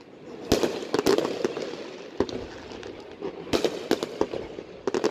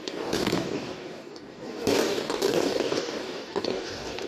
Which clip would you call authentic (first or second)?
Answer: first